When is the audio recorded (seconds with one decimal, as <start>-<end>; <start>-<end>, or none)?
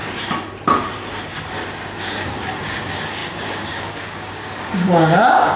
0.0-2.0